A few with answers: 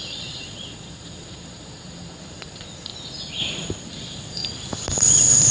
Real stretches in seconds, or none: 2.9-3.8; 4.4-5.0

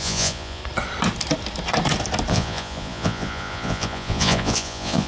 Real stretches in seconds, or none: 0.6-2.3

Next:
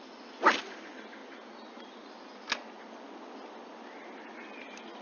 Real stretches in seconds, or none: 0.0-5.0

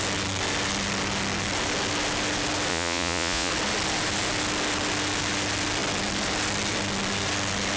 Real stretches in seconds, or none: 0.0-2.7; 3.5-7.8

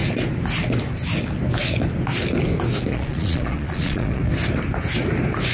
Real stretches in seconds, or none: 0.0-2.9; 4.2-5.5

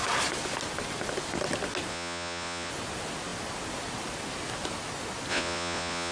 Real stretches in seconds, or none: 0.0-1.9; 2.7-5.3

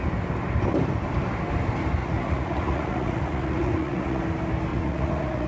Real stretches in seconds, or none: 0.0-2.0; 4.2-4.7